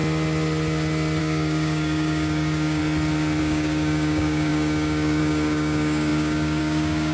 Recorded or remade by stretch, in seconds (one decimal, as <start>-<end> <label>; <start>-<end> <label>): 0.0-1.2 recorded; 1.2-2.8 remade; 2.8-3.4 recorded; 3.4-7.1 remade